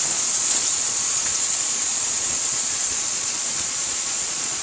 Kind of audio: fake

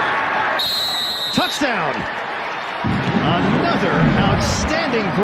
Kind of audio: real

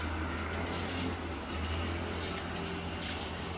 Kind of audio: real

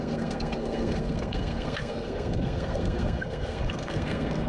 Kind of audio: fake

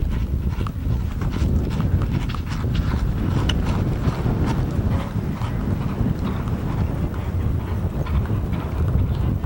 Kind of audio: real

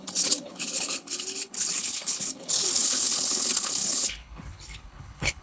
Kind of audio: fake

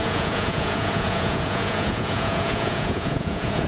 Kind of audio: fake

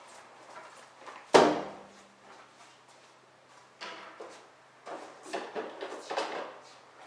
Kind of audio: real